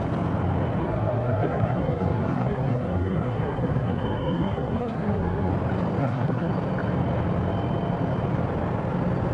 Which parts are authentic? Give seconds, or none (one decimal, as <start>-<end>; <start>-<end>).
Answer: 0.0-0.8; 5.5-6.0; 6.5-9.3